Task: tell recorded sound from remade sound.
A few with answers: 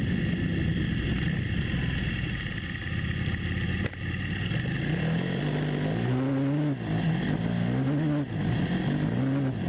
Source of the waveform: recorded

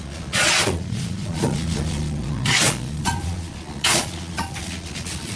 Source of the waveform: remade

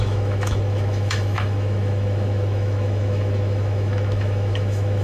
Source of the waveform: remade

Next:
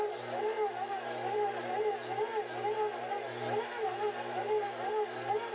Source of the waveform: recorded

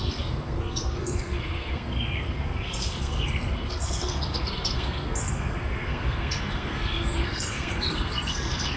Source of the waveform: remade